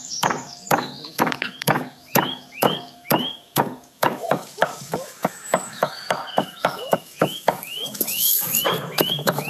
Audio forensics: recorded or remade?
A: remade